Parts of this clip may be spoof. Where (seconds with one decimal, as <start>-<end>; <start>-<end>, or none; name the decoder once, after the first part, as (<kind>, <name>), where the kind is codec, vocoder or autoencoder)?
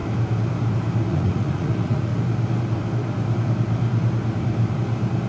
1.1-2.1 (vocoder, Vocos)